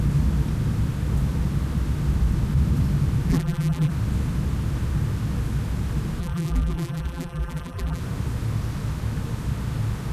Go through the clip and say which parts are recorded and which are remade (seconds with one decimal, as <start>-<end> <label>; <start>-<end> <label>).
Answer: 0.0-3.3 recorded; 3.3-3.9 remade; 3.9-6.2 recorded; 6.2-8.0 remade; 8.0-10.1 recorded